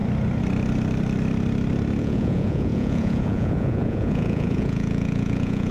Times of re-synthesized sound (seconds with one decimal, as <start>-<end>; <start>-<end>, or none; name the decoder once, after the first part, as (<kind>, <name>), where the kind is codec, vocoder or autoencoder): 2.0-5.7 (vocoder, Vocos)

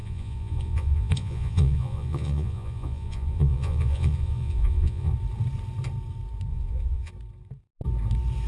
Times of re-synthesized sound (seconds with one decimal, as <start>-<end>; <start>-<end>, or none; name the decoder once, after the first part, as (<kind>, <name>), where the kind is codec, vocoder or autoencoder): 0.0-5.1 (vocoder, Vocos); 6.5-7.1

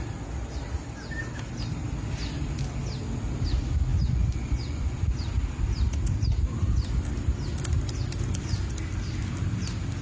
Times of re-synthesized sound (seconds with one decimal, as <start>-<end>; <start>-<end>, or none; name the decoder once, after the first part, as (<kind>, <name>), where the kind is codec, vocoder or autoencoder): 3.9-5.0 (vocoder, Vocos)